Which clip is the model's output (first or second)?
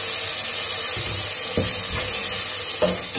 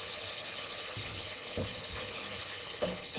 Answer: second